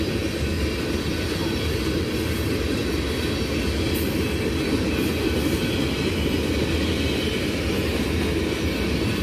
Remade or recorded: recorded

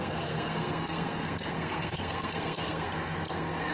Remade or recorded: remade